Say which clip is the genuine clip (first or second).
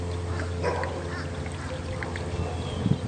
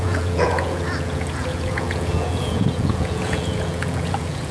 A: first